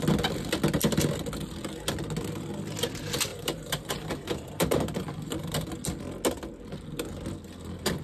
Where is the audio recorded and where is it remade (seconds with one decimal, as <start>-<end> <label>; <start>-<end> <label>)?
0.0-3.3 recorded; 3.3-5.7 remade; 5.7-8.0 recorded